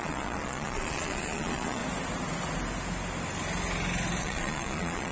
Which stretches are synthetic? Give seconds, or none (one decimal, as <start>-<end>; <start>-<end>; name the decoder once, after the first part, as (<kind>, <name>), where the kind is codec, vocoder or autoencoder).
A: 0.0-1.8 (vocoder, Vocos); 4.2-5.1

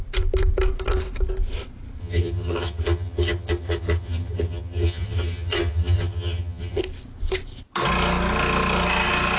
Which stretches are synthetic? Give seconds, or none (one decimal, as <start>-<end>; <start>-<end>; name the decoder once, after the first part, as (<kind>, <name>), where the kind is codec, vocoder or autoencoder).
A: 2.0-6.8 (vocoder, HiFi-GAN)

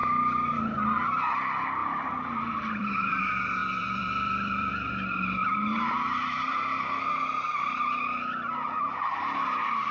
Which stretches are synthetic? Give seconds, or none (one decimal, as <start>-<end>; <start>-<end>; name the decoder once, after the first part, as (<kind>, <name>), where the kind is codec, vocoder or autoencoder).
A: 1.8-3.2 (vocoder, BigVGAN v2); 3.6-4.7; 5.4-6.5

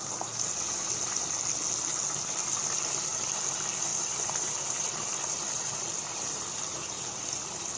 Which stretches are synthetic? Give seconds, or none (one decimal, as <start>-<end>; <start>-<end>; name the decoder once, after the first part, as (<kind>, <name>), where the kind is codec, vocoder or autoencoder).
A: 3.9-7.8 (vocoder, BigVGAN v2)

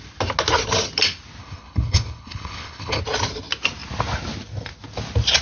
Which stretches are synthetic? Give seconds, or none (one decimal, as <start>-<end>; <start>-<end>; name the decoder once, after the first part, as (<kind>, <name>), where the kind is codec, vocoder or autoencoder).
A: 1.4-3.0 (codec, HILCodec)

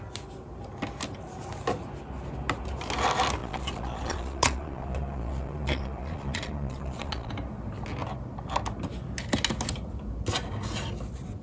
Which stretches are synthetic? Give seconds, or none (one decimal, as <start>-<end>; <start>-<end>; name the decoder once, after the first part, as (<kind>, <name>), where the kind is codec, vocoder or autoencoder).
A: 3.4-7.3 (vocoder, Vocos)

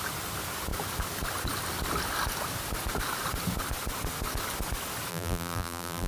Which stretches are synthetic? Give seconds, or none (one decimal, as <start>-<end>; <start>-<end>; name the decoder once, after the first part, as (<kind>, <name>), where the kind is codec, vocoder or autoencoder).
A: 5.1-6.1 (vocoder, BigVGAN v2)

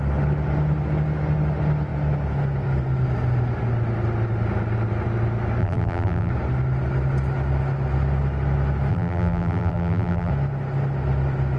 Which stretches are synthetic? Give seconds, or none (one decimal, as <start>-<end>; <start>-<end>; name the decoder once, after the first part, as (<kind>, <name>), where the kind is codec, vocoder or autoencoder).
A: 5.6-6.3 (vocoder, BigVGAN v2); 8.9-10.3